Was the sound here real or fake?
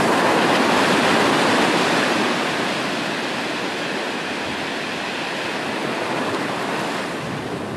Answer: real